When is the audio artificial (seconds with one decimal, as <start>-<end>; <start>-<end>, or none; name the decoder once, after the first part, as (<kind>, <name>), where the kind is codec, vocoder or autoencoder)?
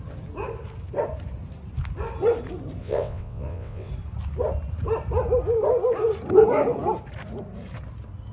2.8-3.9 (vocoder, WaveNeXt)